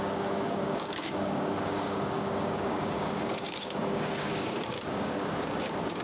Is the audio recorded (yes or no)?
no